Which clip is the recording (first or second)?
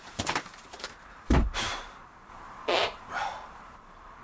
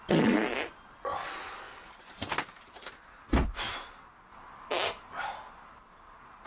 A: second